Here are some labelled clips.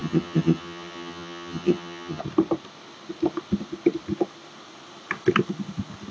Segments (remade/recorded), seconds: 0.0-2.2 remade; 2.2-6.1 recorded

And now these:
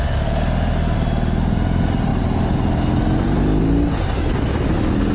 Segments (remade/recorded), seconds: 0.0-5.1 recorded